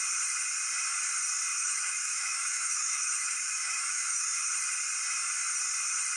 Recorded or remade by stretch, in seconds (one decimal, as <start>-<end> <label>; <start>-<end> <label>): 0.0-1.5 recorded; 1.5-4.5 remade; 4.5-6.2 recorded